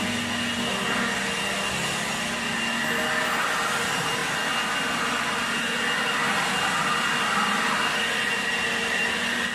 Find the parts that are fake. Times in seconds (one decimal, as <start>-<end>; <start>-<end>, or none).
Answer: none